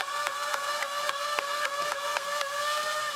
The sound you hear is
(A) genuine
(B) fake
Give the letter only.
B